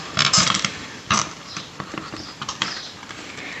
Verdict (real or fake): fake